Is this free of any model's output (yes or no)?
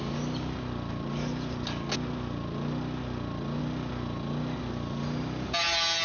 yes